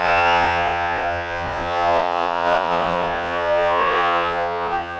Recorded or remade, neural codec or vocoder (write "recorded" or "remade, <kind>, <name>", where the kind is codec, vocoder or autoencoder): remade, vocoder, Vocos